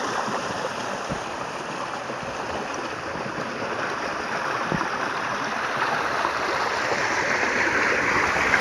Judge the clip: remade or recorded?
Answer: recorded